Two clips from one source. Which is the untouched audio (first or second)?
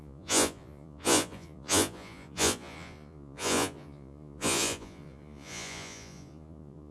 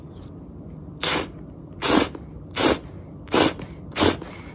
second